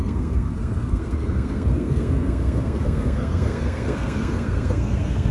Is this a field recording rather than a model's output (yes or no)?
no